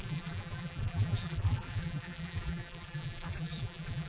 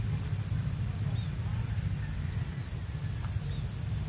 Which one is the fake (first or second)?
first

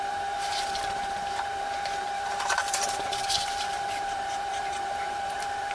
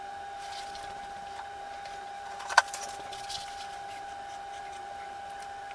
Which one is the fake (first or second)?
first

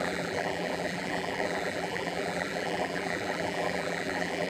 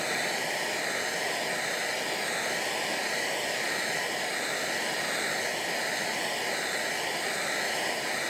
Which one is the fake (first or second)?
first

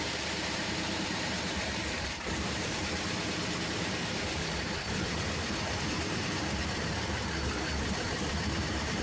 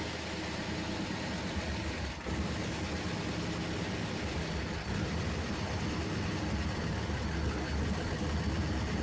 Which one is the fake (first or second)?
first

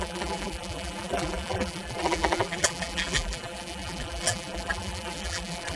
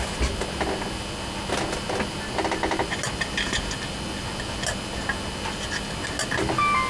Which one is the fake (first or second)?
first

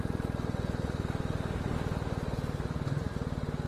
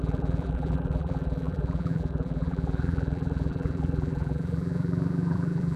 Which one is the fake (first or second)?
second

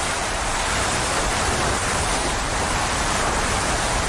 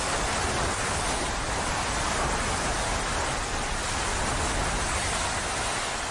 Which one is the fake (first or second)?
first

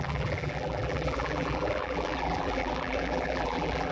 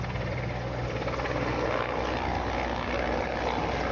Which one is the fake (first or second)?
first